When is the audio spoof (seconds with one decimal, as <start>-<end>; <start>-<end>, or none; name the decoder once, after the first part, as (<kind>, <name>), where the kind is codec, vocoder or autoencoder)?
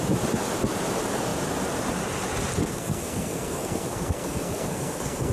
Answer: 2.6-5.3 (codec, SNAC)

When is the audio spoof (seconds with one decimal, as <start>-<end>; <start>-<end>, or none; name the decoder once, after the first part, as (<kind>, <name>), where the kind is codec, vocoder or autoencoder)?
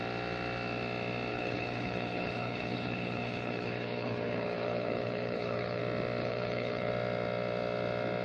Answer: 1.3-5.8 (codec, HILCodec); 6.2-6.9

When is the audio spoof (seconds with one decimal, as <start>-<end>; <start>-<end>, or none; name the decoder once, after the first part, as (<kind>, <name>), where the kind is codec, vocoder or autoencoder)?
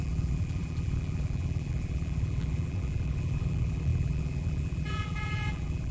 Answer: 0.0-5.9 (vocoder, BigVGAN v2)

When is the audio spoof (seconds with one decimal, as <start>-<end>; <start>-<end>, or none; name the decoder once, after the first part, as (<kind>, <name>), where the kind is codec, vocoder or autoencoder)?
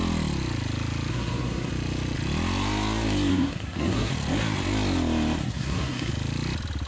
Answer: 1.1-1.7 (codec, SNAC); 3.3-4.1; 5.4-6.1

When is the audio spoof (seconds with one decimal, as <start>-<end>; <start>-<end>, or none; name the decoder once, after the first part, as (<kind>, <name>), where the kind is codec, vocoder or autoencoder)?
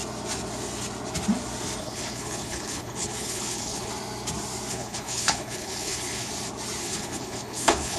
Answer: 1.8-3.9 (codec, HILCodec); 4.7-6.3; 6.8-8.0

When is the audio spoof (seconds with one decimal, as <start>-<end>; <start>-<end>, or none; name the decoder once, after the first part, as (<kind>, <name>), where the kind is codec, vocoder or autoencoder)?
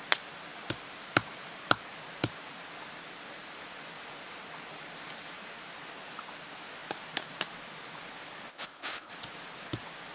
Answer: 8.5-9.1 (codec, HILCodec)